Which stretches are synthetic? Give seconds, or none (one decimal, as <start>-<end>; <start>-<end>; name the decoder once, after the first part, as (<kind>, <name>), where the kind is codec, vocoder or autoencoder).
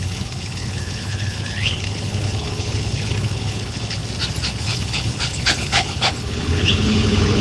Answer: 0.0-4.0 (codec, HILCodec); 4.6-7.4